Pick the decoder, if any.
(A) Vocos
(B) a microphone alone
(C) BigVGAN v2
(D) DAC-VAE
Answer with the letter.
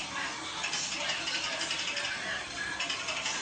B